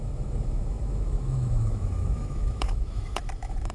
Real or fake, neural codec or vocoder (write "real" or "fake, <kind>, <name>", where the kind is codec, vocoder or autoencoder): fake, autoencoder, DAC-VAE